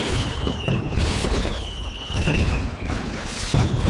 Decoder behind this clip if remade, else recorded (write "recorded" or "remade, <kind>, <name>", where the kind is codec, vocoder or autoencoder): remade, codec, HILCodec